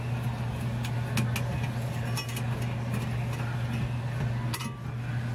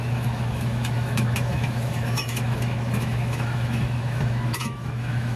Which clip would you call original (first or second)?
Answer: first